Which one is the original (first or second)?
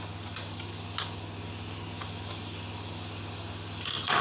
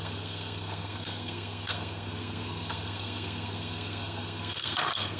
first